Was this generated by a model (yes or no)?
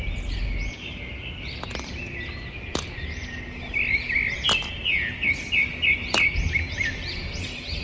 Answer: no